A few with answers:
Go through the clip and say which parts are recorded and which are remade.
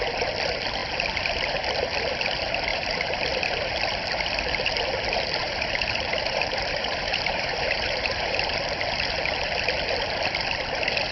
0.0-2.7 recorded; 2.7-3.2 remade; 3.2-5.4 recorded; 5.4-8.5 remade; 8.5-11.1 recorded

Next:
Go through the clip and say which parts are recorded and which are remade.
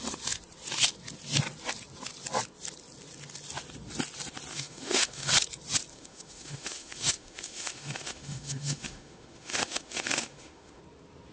0.0-4.5 recorded; 4.5-5.3 remade; 5.3-5.9 recorded; 5.9-10.8 remade; 10.8-11.3 recorded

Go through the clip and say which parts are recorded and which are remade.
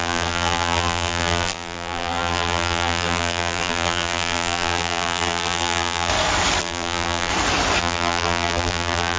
0.0-6.1 remade; 6.1-6.6 recorded; 6.6-7.3 remade; 7.3-7.8 recorded; 7.8-9.2 remade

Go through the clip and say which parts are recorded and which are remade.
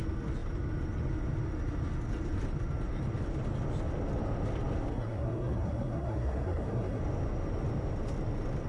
0.0-4.9 recorded; 4.9-7.0 remade; 7.0-8.7 recorded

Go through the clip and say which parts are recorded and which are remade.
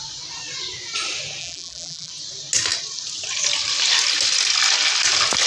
0.0-1.4 recorded; 1.4-2.1 remade; 2.1-5.5 recorded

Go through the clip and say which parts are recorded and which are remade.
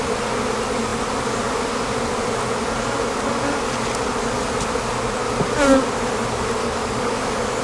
0.0-6.6 recorded; 6.6-7.6 remade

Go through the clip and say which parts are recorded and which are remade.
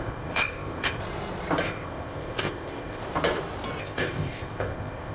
0.0-1.0 remade; 1.0-1.6 recorded; 1.6-3.0 remade; 3.0-3.8 recorded; 3.8-5.1 remade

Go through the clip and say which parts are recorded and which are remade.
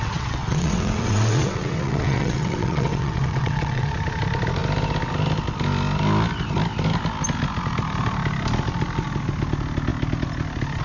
0.0-3.9 remade; 3.9-10.8 recorded